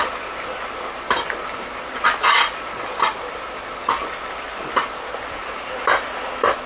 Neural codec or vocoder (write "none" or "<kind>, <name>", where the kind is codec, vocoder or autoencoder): none